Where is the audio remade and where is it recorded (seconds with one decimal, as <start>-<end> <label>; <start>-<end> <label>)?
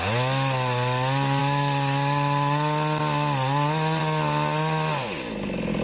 0.0-5.8 recorded